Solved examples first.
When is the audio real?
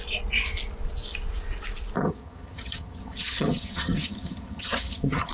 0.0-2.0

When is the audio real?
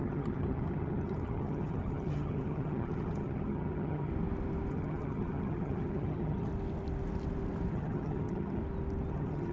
4.1-4.7; 6.5-7.7; 8.6-9.1